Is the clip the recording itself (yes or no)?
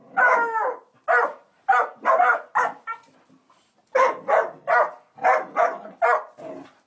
yes